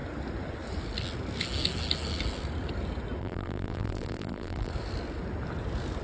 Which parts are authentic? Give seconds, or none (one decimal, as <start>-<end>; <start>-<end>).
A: 0.0-3.2; 4.7-6.0

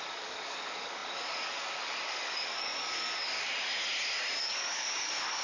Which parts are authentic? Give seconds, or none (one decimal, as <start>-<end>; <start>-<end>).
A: 3.5-4.4

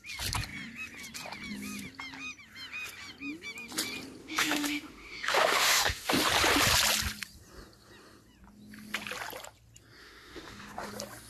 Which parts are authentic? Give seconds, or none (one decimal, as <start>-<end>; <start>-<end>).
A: 0.0-4.2; 6.1-10.0; 10.9-11.3